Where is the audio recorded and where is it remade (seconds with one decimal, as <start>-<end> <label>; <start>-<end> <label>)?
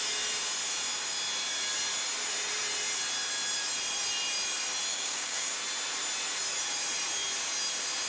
0.0-4.9 recorded; 4.9-5.5 remade; 5.5-8.1 recorded